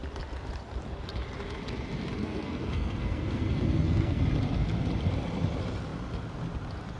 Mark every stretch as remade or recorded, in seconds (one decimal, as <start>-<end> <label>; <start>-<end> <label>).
0.0-2.2 recorded; 2.2-4.2 remade; 4.2-7.0 recorded